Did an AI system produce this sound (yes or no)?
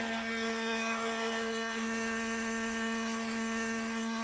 yes